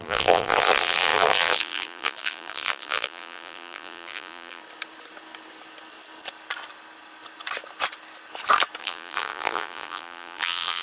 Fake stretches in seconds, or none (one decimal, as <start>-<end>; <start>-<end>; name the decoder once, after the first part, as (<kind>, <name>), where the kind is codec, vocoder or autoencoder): 0.0-4.6 (vocoder, BigVGAN v2); 8.8-10.8